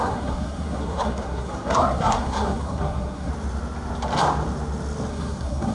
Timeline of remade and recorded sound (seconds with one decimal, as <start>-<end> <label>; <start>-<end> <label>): 0.0-3.3 remade; 3.3-5.1 recorded; 5.1-5.7 remade